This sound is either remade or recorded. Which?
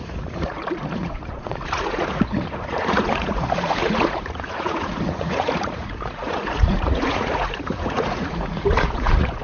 remade